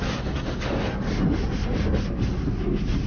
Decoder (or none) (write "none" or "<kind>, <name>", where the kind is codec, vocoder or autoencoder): none